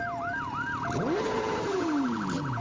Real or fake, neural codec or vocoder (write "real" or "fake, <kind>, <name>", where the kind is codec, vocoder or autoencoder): fake, vocoder, BigVGAN v2